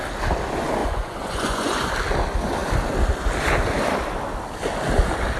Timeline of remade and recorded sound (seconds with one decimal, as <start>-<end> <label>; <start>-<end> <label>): 0.0-0.8 recorded; 0.8-1.9 remade; 1.9-5.4 recorded